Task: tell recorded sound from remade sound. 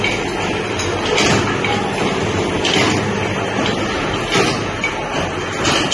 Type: recorded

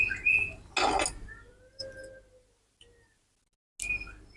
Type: recorded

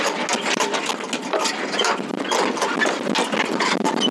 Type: recorded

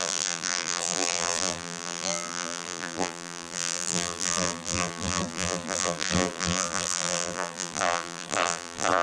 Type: remade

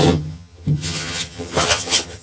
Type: remade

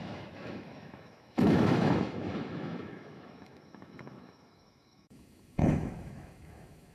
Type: remade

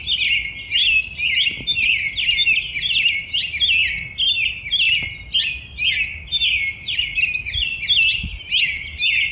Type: recorded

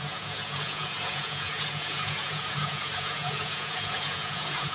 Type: remade